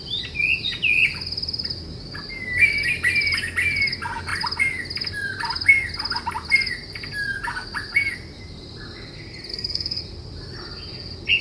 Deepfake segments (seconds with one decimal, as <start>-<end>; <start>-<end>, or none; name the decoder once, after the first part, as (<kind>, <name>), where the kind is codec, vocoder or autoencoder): 9.5-10.0 (codec, SNAC)